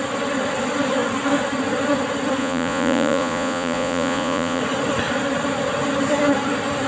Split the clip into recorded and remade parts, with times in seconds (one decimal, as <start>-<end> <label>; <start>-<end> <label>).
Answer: 0.0-2.4 recorded; 2.4-4.6 remade; 4.6-6.9 recorded